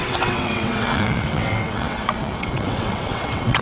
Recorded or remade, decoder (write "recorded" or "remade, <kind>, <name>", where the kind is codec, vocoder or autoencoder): remade, vocoder, WaveNeXt